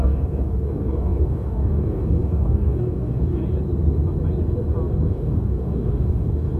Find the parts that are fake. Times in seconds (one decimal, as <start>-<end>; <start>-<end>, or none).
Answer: 0.0-3.4; 4.9-6.6